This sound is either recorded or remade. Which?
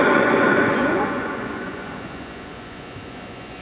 remade